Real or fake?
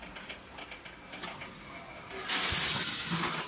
real